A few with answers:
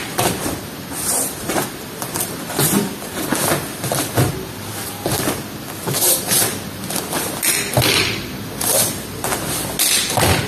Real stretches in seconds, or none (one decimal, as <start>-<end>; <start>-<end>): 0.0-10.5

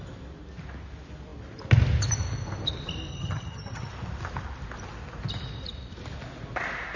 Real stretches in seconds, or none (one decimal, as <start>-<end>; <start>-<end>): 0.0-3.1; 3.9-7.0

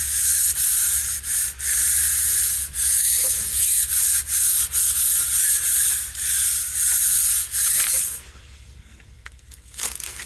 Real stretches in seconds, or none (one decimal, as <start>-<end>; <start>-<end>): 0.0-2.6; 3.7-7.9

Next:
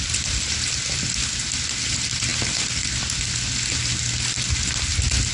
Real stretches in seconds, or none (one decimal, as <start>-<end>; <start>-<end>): 0.0-5.3

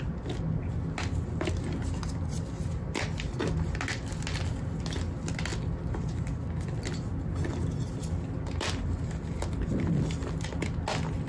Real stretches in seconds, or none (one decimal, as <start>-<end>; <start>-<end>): 0.0-5.5; 6.5-11.3

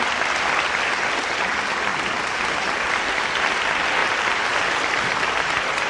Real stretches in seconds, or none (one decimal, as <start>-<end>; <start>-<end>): 0.0-4.0

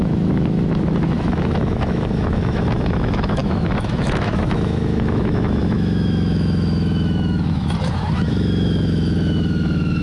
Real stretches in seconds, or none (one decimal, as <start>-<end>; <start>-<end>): none